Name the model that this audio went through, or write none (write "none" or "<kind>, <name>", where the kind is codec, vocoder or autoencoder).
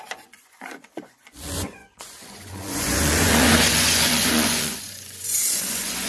vocoder, Vocos